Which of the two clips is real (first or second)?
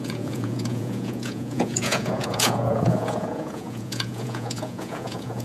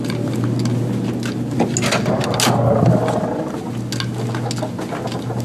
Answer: second